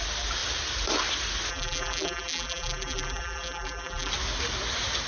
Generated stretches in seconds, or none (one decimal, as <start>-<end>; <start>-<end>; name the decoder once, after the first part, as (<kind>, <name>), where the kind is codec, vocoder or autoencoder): 1.5-4.1 (vocoder, BigVGAN v2)